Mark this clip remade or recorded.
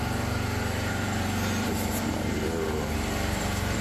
remade